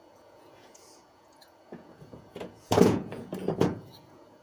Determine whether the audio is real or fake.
fake